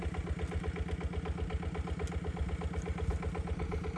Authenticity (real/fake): real